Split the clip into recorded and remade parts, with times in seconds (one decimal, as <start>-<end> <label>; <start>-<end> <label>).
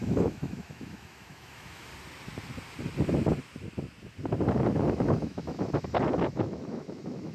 0.0-1.9 remade; 1.9-4.9 recorded; 4.9-7.3 remade